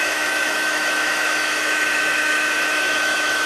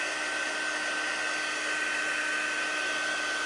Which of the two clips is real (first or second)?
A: second